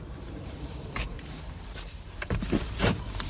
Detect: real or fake fake